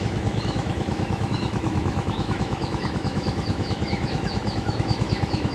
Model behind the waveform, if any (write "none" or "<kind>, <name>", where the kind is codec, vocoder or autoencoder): autoencoder, DAC-VAE